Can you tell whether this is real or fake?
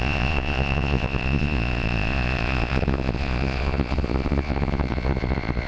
fake